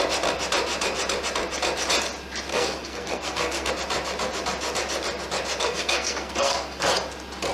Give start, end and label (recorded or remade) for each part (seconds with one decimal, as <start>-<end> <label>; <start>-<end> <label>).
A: 0.0-2.5 recorded; 2.5-3.7 remade; 3.7-5.6 recorded; 5.6-6.9 remade; 6.9-7.5 recorded